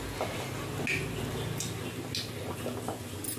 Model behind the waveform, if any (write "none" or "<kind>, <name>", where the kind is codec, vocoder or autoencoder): none